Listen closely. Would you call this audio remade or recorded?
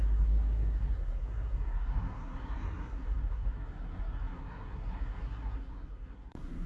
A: remade